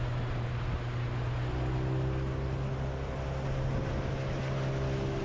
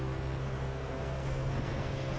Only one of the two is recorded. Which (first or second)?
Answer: first